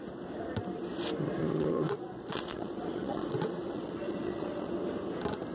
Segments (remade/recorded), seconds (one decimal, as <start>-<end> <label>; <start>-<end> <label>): 0.0-1.4 recorded; 1.4-4.7 remade; 4.7-5.5 recorded